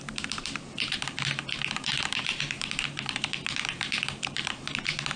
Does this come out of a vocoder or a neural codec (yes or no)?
yes